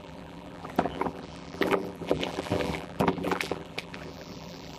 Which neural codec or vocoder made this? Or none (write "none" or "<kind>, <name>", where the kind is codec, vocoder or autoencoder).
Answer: vocoder, BigVGAN v2